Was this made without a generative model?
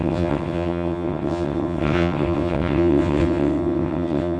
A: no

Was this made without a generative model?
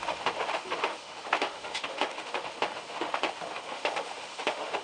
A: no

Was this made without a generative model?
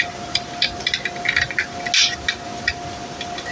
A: yes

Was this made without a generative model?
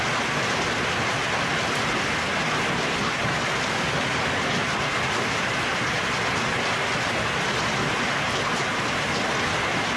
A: yes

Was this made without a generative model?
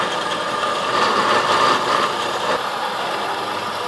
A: no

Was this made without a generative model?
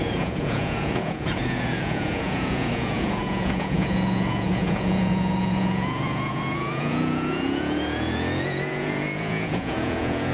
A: no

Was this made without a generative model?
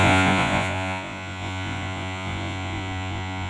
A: no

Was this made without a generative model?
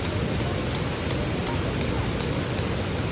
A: yes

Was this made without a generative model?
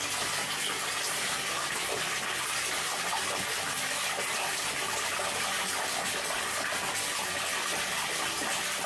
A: yes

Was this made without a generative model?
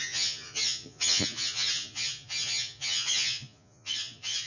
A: no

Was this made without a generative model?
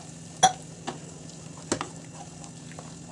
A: yes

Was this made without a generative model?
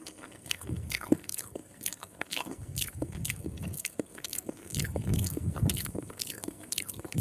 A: no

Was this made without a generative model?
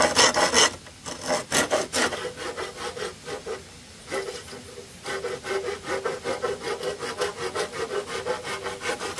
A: yes